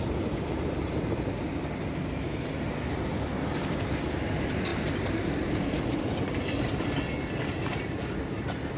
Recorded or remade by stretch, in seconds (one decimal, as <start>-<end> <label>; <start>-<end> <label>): 0.0-4.7 recorded; 4.7-7.3 remade; 7.3-8.8 recorded